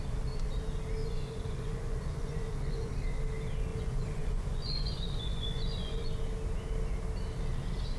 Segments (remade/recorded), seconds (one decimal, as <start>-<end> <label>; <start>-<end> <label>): 0.0-1.0 recorded; 1.0-2.9 remade; 2.9-3.7 recorded; 3.7-6.1 remade; 6.1-8.0 recorded